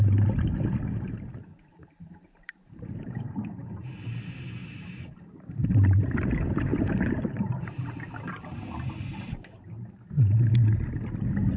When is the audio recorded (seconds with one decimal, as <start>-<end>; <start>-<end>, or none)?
0.0-1.7; 3.7-4.6; 6.3-6.7; 10.5-11.6